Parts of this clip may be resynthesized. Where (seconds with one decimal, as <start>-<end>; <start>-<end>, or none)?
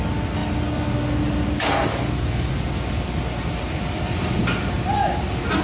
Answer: 1.9-2.5